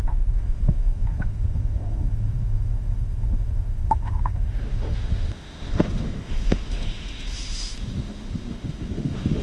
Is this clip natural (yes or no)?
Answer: no